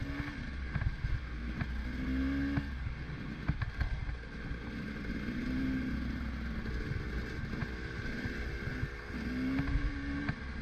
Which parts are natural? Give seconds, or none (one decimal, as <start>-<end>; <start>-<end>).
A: 0.0-10.6